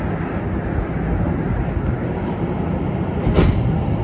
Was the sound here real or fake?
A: real